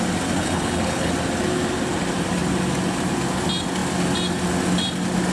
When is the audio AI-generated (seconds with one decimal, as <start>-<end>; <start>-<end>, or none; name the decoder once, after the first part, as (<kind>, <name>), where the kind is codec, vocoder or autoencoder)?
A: 0.4-1.1 (codec, HILCodec)